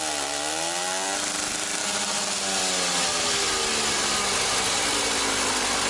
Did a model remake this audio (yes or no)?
no